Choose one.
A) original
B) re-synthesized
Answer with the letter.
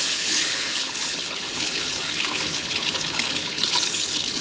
B